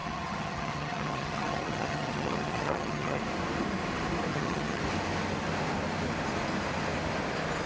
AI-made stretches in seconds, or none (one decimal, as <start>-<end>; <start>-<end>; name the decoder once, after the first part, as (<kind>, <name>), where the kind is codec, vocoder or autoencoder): 0.0-3.2 (vocoder, HiFi-GAN); 4.3-4.8